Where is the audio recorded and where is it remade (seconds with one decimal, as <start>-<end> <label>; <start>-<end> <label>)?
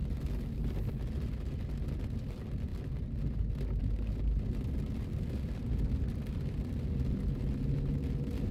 0.0-8.5 recorded